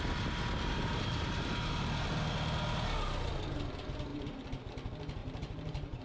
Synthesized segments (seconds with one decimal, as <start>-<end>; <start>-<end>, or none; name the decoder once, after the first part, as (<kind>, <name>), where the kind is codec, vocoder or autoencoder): 0.9-2.1 (vocoder, BigVGAN v2); 4.1-4.7; 5.2-6.0